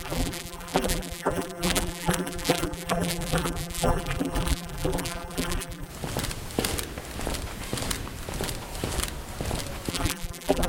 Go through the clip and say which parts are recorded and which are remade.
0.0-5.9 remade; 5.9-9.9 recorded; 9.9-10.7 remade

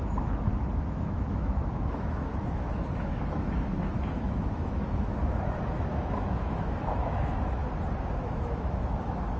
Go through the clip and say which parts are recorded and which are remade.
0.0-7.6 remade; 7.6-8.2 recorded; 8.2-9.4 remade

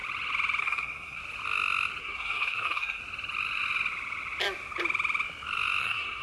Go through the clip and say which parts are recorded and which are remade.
0.0-0.6 recorded; 0.6-1.2 remade; 1.2-2.0 recorded; 2.0-3.0 remade; 3.0-5.8 recorded; 5.8-6.2 remade

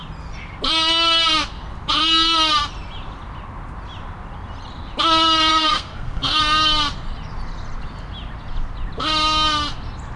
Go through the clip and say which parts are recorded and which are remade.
0.0-5.5 recorded; 5.5-6.4 remade; 6.4-10.2 recorded

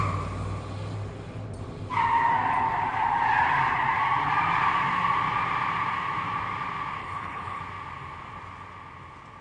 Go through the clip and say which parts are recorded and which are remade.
0.0-7.0 recorded; 7.0-7.6 remade; 7.6-9.4 recorded

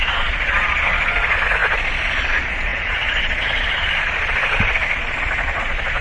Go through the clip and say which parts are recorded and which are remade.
0.0-6.0 remade

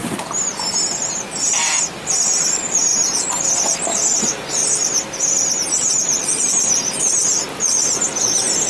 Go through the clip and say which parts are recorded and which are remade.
0.0-2.1 recorded; 2.1-2.9 remade; 2.9-4.1 recorded; 4.1-4.6 remade; 4.6-5.7 recorded; 5.7-8.7 remade

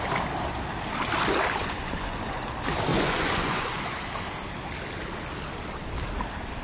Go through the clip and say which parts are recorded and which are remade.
0.0-1.6 recorded; 1.6-2.4 remade; 2.4-2.9 recorded; 2.9-3.8 remade; 3.8-6.6 recorded